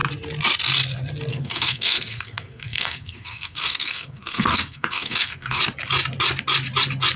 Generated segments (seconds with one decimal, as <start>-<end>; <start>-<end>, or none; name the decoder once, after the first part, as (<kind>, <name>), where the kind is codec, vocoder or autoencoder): 1.3-5.6 (codec, SNAC)